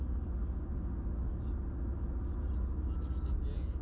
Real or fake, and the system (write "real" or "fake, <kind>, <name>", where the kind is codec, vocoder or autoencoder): real